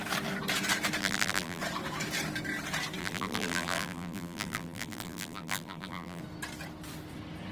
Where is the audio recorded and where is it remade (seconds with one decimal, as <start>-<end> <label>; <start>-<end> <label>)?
0.0-1.0 recorded; 1.0-1.6 remade; 1.6-3.0 recorded; 3.0-6.2 remade; 6.2-7.5 recorded